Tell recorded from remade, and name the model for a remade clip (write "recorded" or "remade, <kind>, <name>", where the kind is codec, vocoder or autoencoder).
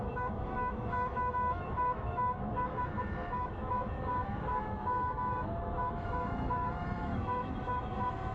remade, autoencoder, DAC-VAE